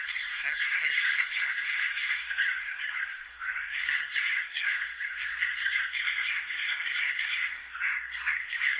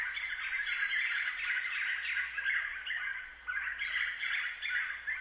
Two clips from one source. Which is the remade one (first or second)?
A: first